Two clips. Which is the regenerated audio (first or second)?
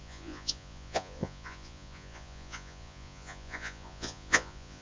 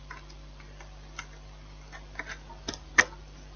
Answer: first